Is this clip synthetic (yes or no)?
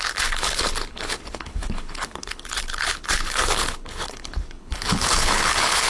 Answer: yes